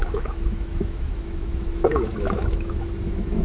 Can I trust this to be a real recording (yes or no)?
no